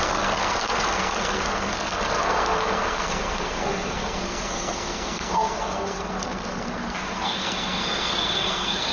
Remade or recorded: remade